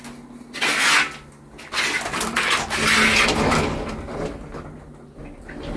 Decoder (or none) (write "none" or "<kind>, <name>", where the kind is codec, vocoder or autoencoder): none